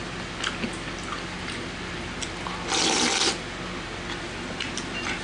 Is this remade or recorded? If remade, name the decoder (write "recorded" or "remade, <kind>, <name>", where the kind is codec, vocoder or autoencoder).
recorded